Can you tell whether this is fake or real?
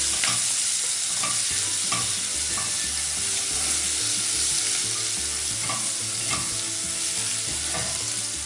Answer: real